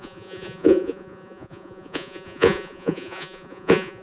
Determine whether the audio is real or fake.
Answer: fake